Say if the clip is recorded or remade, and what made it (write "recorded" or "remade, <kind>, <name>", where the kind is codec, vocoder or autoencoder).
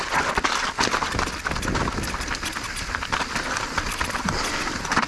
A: recorded